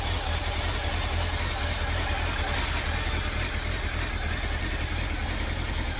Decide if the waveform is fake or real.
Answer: real